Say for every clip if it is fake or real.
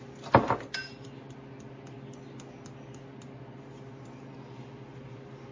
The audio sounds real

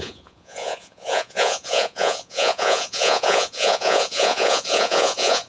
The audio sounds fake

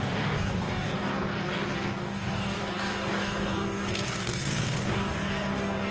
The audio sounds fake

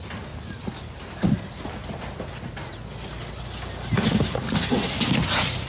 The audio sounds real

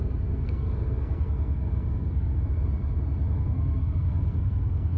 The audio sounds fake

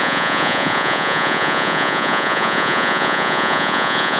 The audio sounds fake